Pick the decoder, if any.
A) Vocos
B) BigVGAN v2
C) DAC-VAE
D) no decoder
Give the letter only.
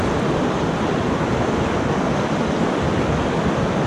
D